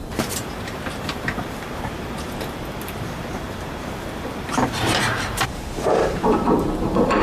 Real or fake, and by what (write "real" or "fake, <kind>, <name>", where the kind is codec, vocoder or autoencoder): fake, vocoder, BigVGAN v2